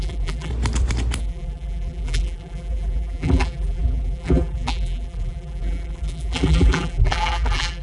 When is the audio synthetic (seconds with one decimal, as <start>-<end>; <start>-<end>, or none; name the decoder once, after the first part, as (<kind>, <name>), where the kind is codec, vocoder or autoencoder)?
0.0-0.5 (vocoder, BigVGAN v2); 1.2-7.8